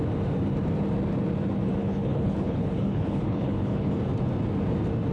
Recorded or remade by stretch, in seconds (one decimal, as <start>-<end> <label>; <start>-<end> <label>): 0.0-1.8 recorded; 1.8-3.9 remade; 3.9-5.1 recorded